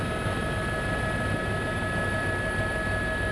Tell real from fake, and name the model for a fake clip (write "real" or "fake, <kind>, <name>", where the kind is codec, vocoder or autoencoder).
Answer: real